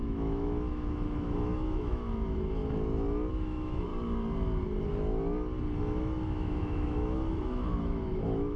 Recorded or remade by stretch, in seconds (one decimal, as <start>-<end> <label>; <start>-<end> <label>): 0.0-2.6 remade; 2.6-3.3 recorded; 3.3-3.9 remade; 3.9-5.8 recorded; 5.8-8.6 remade